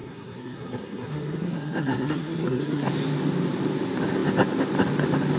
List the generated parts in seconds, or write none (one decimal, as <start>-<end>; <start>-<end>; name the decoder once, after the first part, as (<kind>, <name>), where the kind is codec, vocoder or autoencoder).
0.0-2.9 (codec, SNAC)